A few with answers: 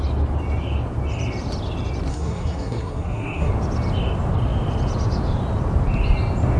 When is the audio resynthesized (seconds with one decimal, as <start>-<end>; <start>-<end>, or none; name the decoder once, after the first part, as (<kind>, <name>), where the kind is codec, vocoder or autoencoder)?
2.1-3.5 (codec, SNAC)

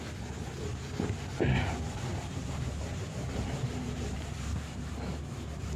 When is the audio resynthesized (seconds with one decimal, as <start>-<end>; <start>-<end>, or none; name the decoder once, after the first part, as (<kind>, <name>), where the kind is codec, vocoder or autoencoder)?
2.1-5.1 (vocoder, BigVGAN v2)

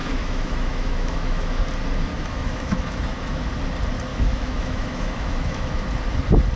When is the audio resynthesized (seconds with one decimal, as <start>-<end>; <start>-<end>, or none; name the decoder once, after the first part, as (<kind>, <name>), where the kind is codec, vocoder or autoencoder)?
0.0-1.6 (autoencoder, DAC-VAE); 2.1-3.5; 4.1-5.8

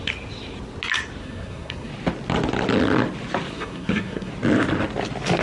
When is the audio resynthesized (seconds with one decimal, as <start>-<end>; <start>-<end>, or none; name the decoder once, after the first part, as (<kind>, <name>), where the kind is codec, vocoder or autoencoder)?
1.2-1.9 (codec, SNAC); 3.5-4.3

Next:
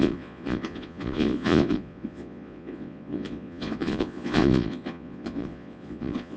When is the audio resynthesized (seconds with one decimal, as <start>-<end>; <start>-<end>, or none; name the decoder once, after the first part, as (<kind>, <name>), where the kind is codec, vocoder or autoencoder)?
0.0-6.4 (vocoder, Vocos)